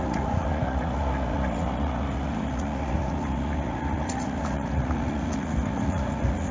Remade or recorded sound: remade